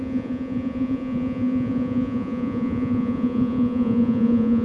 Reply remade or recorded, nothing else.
remade